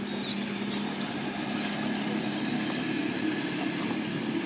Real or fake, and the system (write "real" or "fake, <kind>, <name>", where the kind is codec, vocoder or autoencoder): real